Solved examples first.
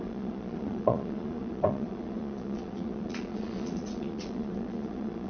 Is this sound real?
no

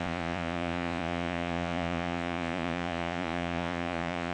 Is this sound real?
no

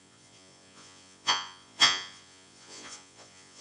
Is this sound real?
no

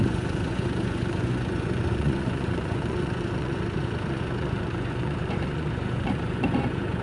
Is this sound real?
no